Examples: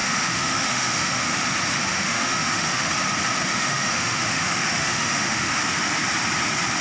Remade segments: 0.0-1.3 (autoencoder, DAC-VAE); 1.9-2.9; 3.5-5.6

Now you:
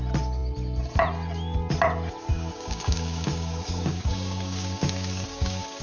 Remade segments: 2.3-5.8 (codec, DAC)

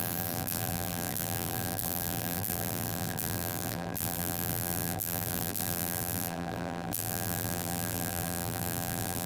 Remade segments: 0.0-9.3 (vocoder, BigVGAN v2)

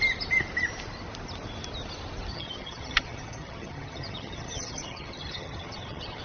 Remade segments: 2.3-6.2 (vocoder, HiFi-GAN)

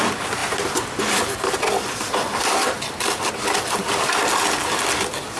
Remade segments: none

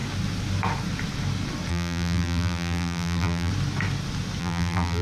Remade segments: 1.7-3.5 (vocoder, BigVGAN v2); 4.4-5.0